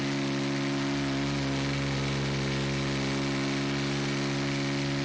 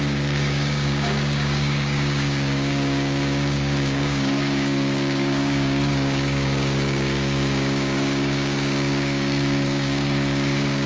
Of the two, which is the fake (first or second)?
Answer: second